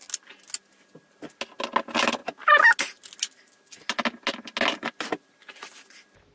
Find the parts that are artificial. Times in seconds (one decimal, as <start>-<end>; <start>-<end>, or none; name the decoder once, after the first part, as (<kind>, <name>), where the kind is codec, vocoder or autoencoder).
none